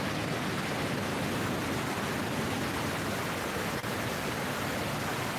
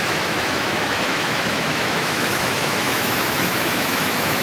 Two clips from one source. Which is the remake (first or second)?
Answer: second